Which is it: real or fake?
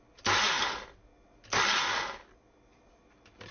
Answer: real